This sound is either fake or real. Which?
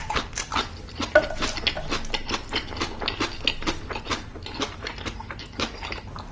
real